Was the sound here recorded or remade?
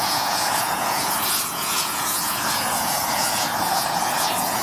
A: remade